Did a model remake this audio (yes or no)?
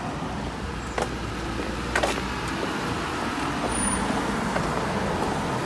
no